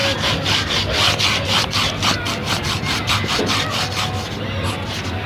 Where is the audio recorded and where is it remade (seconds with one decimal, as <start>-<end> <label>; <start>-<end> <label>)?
0.0-5.3 recorded